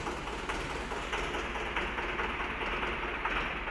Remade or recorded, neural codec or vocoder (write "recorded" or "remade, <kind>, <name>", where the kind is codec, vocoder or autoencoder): recorded